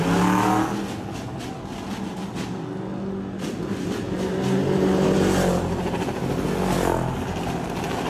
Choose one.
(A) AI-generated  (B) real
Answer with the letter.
B